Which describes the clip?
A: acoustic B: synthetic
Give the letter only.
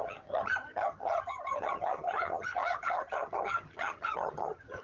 B